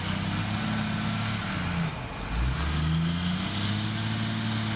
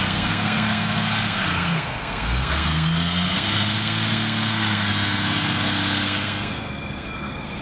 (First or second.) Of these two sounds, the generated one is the second